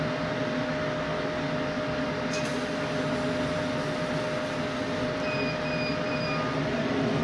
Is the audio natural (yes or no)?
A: yes